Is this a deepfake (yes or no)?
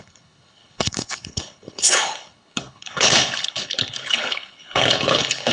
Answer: yes